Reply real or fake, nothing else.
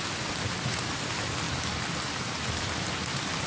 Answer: real